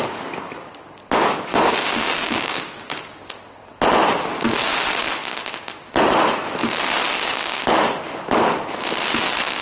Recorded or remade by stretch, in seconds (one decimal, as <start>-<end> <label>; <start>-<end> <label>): 0.0-1.5 recorded; 1.5-3.3 remade; 3.3-9.6 recorded